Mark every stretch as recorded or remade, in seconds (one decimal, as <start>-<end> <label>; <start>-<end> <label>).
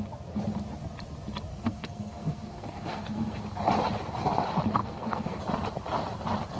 0.0-1.5 recorded; 1.5-3.4 remade; 3.4-4.8 recorded; 4.8-5.4 remade; 5.4-6.6 recorded